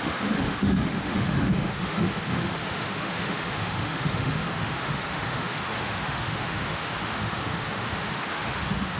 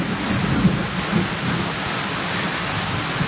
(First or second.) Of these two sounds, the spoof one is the first